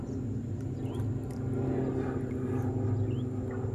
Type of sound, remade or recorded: recorded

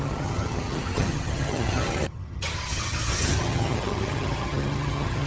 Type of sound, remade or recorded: remade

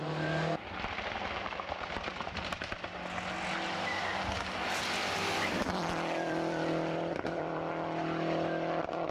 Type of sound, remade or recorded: recorded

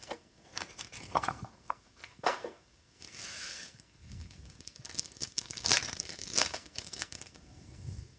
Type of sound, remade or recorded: remade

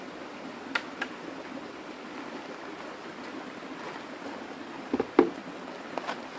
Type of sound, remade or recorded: recorded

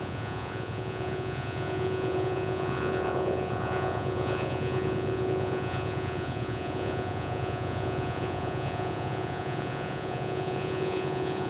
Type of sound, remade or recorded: remade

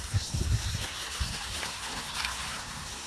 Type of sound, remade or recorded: remade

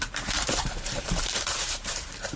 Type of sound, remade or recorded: remade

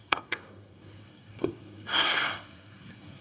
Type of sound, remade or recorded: remade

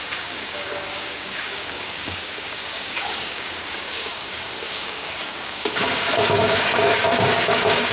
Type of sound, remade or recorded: remade